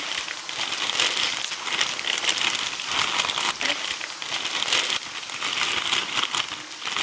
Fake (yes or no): no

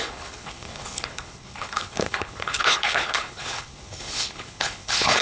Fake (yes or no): yes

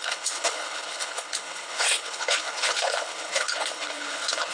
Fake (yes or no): yes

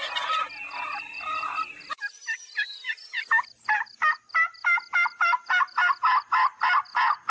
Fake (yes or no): no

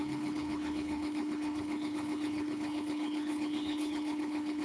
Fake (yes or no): yes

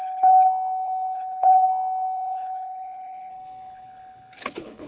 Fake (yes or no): yes